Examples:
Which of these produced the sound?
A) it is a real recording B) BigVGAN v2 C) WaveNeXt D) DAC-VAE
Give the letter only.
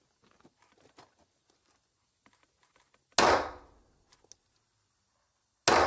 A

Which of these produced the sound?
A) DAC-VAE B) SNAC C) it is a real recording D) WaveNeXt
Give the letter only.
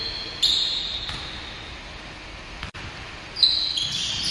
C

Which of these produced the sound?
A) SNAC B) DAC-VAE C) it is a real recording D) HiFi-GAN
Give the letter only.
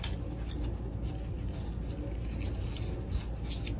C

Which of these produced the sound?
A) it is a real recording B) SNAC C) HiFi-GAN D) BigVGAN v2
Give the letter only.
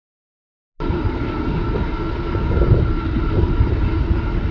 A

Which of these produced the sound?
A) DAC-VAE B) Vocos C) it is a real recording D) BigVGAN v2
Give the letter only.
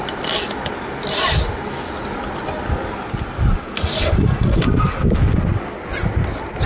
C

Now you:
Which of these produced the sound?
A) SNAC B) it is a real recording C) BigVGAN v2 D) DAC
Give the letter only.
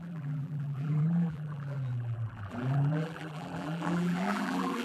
C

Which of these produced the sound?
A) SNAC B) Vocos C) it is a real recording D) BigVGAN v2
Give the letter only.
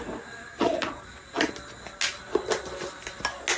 C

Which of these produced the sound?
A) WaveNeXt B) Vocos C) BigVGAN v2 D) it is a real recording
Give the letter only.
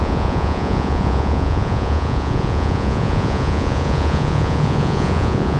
B